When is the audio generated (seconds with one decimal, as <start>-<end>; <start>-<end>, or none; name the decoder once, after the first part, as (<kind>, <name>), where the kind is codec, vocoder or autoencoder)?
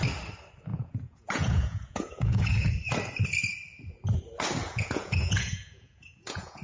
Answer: 0.7-2.7 (vocoder, Vocos); 4.6-6.6